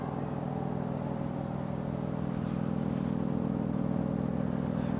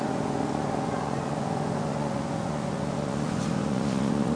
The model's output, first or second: second